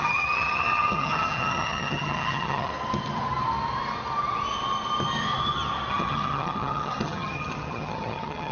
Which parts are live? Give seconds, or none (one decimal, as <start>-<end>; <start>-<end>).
2.7-5.9